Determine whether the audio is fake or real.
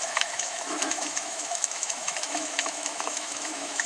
fake